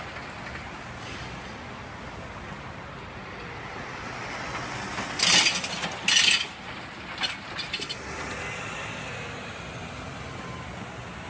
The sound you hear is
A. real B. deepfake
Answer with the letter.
A